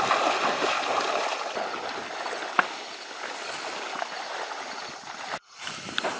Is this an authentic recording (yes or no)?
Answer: yes